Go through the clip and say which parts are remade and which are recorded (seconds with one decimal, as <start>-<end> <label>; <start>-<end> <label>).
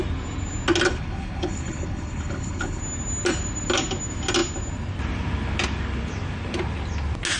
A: 0.0-0.9 recorded; 0.9-2.8 remade; 2.8-7.4 recorded